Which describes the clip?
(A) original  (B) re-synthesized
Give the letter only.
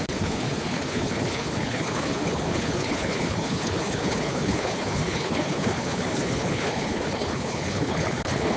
B